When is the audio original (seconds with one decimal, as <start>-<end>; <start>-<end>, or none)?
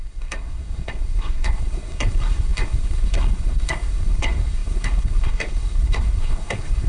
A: none